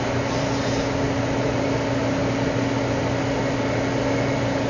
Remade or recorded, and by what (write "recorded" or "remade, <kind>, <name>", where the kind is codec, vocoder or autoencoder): recorded